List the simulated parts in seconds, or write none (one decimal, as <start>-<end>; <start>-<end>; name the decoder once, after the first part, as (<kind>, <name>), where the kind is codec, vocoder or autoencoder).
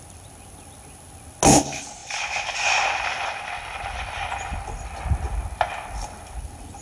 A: none